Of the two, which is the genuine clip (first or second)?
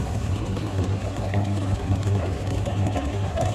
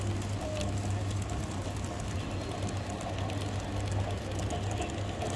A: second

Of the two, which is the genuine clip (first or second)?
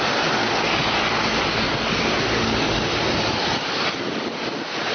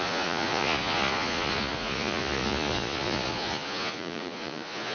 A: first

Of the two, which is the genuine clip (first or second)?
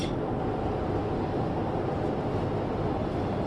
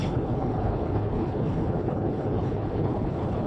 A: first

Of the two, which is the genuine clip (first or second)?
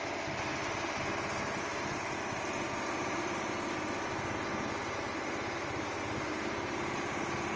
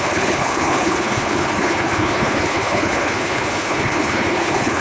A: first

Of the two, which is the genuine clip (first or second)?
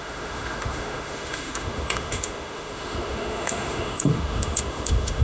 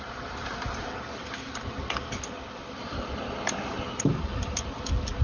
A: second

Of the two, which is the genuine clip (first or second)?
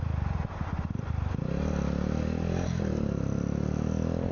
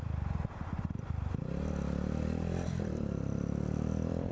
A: first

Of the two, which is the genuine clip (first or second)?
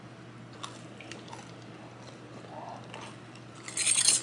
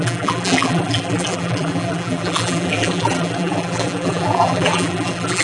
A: first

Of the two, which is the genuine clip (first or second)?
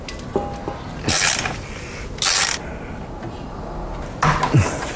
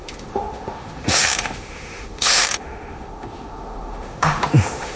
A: first